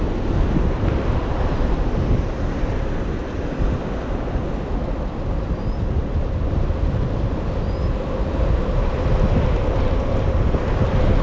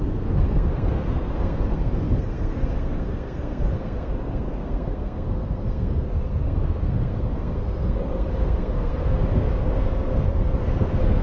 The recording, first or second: first